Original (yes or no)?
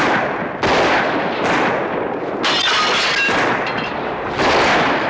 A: yes